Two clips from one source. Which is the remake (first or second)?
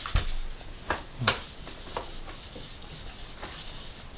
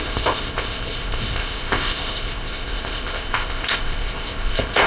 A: second